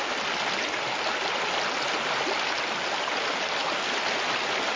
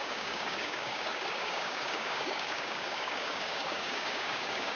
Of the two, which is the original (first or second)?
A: first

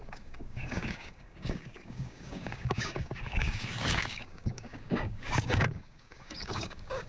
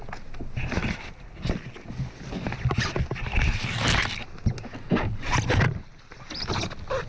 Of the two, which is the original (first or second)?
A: second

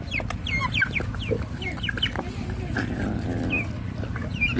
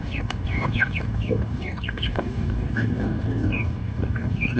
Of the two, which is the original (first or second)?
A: first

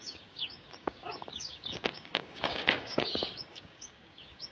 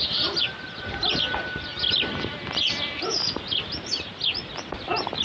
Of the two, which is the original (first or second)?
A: second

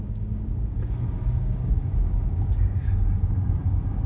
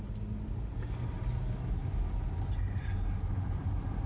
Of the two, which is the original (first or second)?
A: second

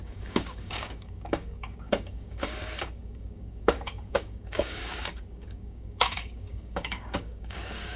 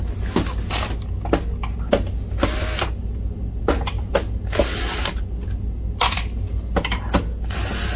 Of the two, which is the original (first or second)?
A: second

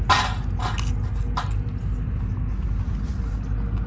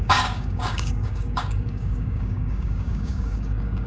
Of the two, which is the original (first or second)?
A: first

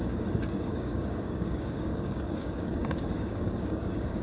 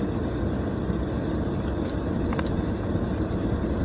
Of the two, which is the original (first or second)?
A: second